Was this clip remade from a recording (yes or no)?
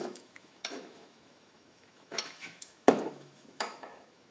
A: yes